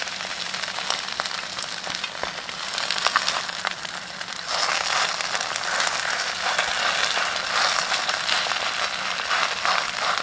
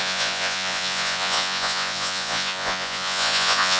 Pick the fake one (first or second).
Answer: second